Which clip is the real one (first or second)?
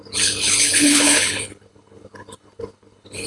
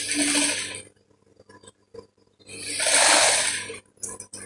second